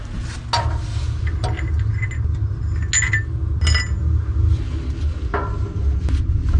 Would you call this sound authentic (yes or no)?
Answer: yes